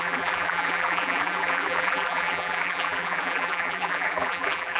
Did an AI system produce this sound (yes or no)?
yes